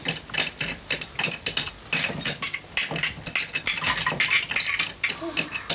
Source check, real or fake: real